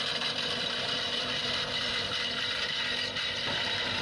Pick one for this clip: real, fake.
fake